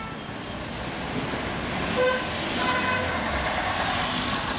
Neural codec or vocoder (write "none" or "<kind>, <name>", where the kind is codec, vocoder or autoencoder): none